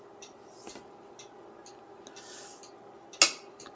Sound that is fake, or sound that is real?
real